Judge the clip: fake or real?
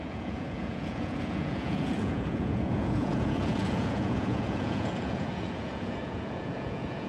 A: fake